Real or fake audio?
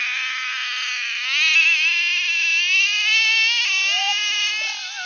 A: real